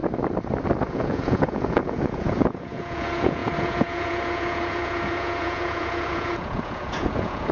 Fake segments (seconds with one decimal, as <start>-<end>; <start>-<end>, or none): 0.8-7.5